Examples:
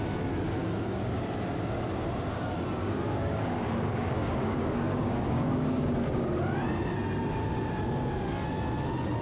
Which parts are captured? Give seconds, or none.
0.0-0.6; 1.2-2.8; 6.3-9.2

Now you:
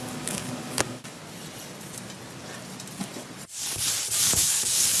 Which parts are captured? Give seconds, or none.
1.2-4.2

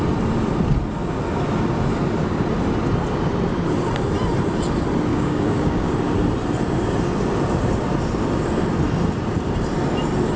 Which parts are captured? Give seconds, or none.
0.0-5.1; 5.9-10.4